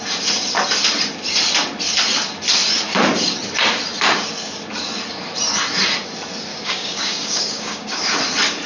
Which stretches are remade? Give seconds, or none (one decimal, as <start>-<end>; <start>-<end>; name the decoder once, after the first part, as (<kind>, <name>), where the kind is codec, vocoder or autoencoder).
6.5-8.0 (codec, DAC)

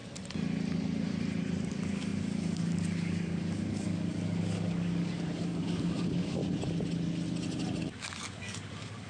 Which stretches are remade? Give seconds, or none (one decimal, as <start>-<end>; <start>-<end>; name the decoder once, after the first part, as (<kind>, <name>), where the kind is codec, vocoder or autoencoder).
1.7-6.4 (codec, DAC); 7.8-9.1